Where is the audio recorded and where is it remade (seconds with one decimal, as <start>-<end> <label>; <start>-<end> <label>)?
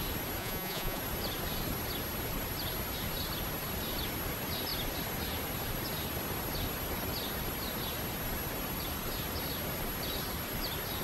0.0-0.4 recorded; 0.4-1.0 remade; 1.0-11.0 recorded